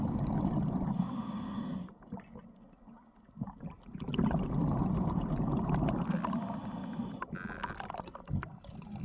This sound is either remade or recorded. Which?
recorded